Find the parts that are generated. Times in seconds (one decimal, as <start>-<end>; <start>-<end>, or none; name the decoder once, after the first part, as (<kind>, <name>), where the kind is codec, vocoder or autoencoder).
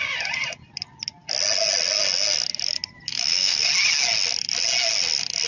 3.1-3.7 (autoencoder, DAC-VAE)